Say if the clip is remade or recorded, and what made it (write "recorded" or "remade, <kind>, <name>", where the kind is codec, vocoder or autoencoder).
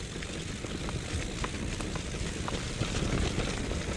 recorded